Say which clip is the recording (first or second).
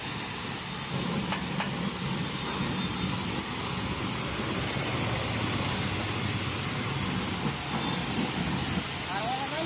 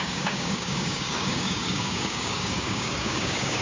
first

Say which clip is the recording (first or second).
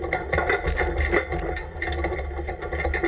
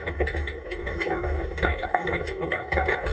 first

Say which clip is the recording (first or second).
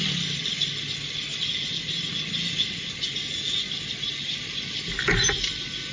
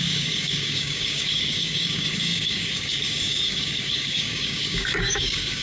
first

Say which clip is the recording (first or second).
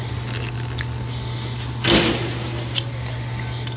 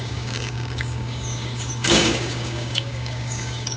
first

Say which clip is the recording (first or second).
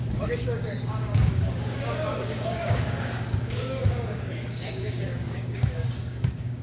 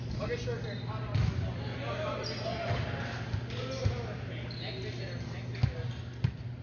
second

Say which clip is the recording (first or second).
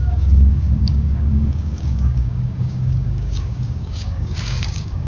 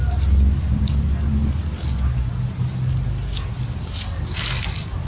second